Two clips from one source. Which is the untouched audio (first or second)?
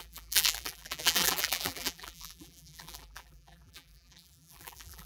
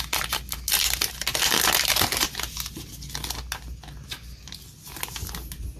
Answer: second